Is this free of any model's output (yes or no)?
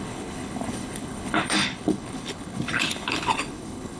no